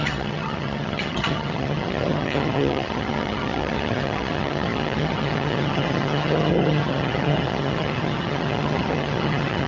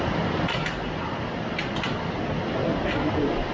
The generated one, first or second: first